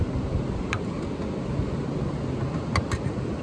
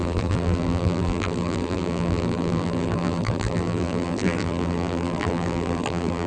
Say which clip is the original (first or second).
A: first